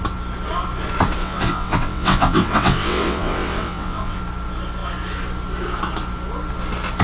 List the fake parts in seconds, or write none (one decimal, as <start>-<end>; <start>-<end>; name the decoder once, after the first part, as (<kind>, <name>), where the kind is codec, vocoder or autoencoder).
1.2-4.2 (vocoder, WaveNeXt)